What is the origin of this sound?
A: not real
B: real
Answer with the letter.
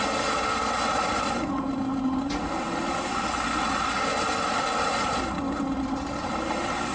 B